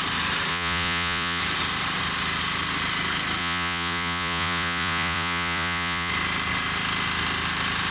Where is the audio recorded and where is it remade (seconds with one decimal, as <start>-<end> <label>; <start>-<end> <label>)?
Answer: 0.0-0.5 recorded; 0.5-1.4 remade; 1.4-3.4 recorded; 3.4-6.1 remade; 6.1-7.9 recorded